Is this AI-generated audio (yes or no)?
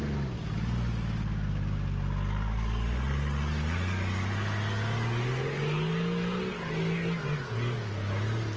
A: no